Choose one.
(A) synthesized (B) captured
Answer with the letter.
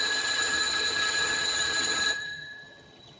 A